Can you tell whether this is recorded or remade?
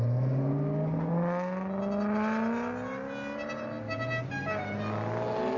recorded